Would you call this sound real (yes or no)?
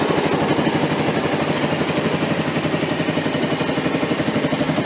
yes